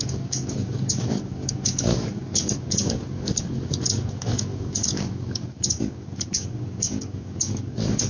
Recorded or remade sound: remade